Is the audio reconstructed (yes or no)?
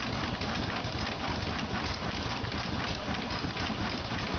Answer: no